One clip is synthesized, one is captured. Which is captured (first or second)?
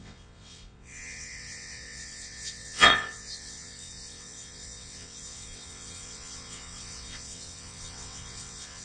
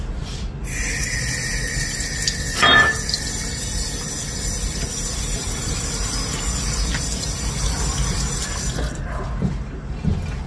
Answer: second